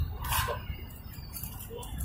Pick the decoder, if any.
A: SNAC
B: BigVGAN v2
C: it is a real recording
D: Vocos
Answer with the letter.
C